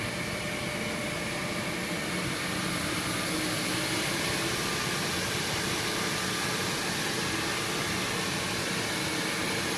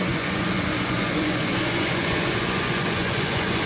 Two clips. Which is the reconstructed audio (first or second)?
second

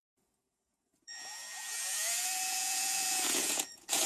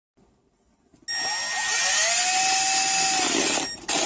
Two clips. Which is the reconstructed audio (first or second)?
first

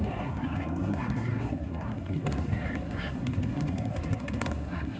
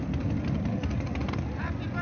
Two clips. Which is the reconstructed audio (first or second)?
first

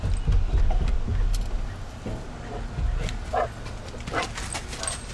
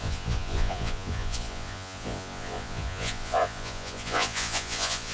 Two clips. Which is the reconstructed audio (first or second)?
second